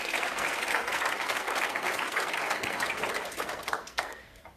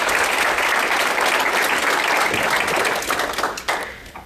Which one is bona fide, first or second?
second